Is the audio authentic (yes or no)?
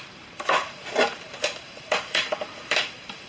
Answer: no